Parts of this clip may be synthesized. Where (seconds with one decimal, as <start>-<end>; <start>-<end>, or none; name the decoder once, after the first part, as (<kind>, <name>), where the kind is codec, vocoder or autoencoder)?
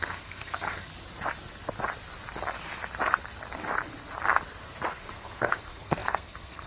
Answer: 0.0-0.9 (codec, SNAC); 4.9-6.7